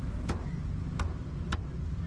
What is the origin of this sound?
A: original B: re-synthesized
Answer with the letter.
A